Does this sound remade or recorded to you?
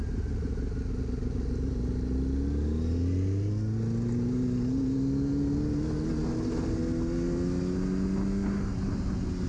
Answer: recorded